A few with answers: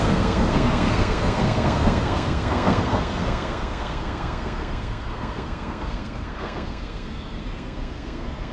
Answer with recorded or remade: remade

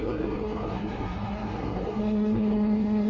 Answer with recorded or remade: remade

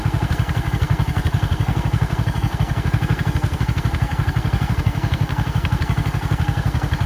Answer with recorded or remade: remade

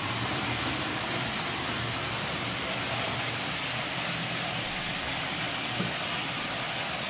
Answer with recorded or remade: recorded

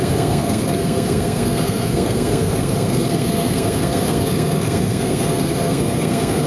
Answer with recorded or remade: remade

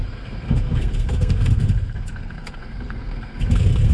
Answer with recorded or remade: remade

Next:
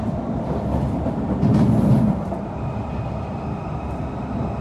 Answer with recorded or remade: recorded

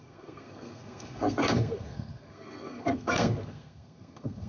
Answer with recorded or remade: remade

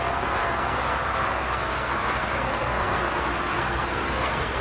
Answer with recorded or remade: remade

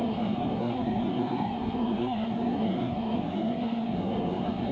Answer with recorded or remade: remade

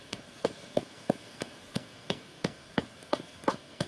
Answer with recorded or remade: remade